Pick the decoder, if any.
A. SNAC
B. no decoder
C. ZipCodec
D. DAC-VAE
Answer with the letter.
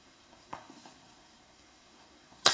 A